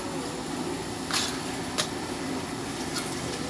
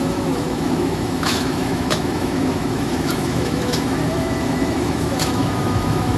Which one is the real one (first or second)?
first